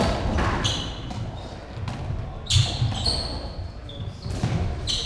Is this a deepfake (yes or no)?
no